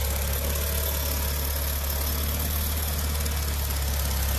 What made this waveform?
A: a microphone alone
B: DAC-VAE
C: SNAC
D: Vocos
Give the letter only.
A